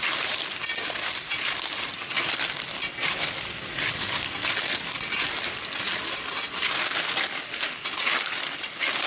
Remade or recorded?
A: recorded